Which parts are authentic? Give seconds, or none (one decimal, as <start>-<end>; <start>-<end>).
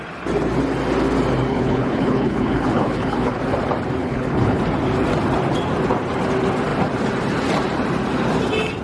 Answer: 0.0-1.5; 3.4-4.0; 4.6-8.8